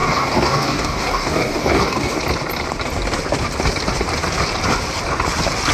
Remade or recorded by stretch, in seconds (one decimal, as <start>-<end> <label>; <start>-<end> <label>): 0.0-2.2 remade; 2.2-5.7 recorded